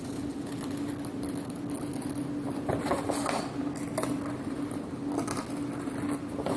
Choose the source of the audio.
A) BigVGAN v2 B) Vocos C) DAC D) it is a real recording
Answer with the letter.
D